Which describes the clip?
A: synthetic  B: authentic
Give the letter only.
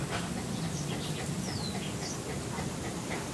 B